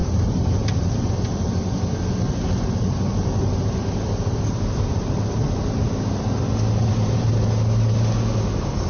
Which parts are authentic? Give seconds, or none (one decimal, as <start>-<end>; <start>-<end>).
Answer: 0.9-3.6; 7.3-8.9